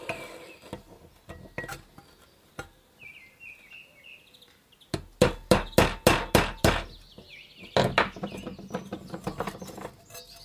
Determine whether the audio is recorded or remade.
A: recorded